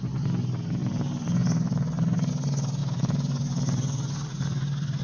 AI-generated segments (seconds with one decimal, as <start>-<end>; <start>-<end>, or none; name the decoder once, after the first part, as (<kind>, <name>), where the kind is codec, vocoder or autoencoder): 2.8-5.0 (vocoder, BigVGAN v2)